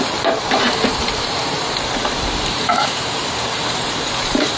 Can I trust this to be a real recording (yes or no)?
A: no